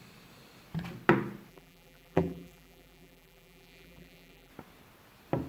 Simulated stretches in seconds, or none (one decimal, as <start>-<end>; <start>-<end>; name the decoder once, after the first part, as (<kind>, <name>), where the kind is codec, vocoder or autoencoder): 1.5-4.5 (vocoder, BigVGAN v2)